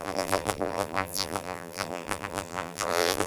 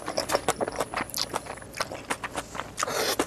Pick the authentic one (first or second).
second